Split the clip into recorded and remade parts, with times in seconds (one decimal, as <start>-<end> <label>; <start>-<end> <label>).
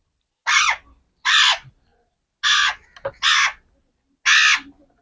0.0-5.0 recorded